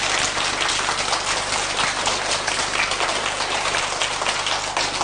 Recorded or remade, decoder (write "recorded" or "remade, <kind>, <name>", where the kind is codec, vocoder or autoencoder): recorded